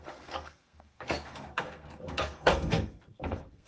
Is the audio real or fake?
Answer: fake